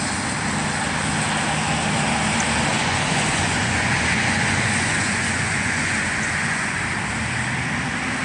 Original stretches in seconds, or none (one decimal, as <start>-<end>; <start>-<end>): 0.0-2.7; 6.8-8.2